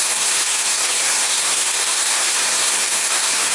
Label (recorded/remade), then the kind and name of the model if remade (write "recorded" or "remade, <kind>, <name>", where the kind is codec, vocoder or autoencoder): remade, codec, SNAC